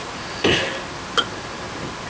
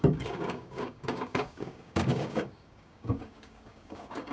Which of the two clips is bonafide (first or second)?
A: first